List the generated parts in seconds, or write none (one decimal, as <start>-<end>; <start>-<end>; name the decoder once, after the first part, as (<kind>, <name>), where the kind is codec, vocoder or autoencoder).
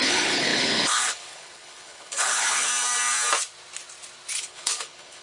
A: 0.0-2.7 (codec, HILCodec); 4.4-5.2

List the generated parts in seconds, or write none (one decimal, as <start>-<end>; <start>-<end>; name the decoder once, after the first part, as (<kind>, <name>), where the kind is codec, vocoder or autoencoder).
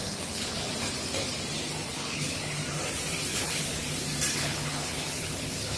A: 0.0-0.7 (codec, HILCodec); 1.9-2.6; 3.3-3.8; 4.3-5.8